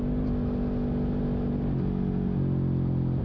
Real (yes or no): yes